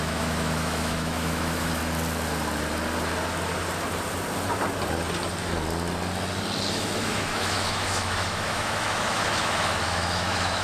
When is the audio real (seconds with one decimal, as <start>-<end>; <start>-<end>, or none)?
1.8-6.7